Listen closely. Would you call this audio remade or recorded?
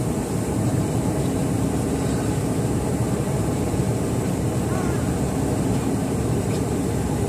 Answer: remade